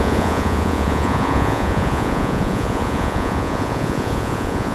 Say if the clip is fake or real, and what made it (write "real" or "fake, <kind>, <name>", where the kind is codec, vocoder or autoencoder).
fake, vocoder, Vocos